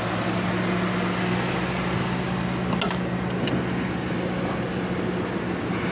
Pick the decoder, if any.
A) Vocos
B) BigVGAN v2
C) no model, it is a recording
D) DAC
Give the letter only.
C